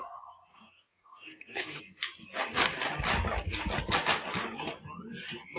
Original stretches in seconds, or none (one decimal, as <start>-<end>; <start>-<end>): 0.0-0.5; 1.8-5.6